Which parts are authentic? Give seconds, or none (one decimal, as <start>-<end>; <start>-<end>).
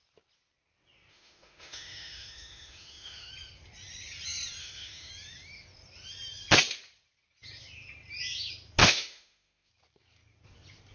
0.0-1.1; 3.3-4.6; 5.1-8.8; 9.7-10.9